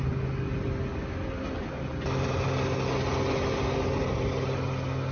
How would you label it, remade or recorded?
recorded